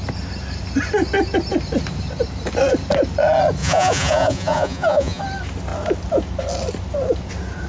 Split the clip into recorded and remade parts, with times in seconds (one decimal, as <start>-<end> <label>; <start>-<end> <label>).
0.0-3.6 recorded; 3.6-5.2 remade; 5.2-7.7 recorded